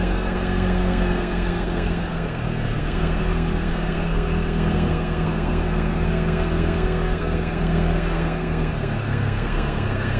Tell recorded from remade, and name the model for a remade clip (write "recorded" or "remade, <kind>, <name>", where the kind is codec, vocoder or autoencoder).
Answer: remade, codec, SNAC